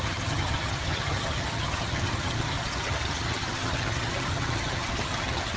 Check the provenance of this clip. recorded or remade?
remade